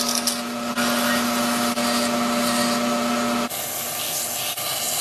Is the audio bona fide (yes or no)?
yes